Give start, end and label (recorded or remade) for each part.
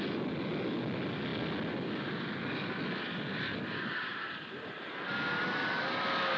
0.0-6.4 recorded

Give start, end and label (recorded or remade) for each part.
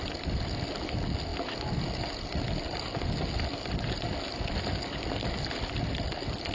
0.0-6.5 recorded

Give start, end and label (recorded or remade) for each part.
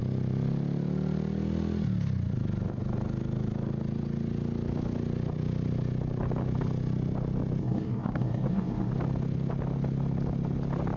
0.0-7.6 recorded; 7.6-8.9 remade; 8.9-11.0 recorded